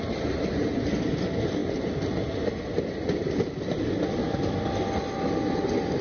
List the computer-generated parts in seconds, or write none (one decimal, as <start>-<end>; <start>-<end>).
none